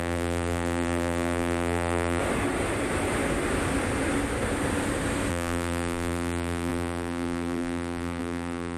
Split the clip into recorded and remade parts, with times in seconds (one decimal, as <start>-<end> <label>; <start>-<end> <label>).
0.0-2.2 remade; 2.2-5.3 recorded; 5.3-8.8 remade